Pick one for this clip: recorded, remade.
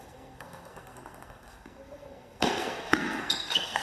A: remade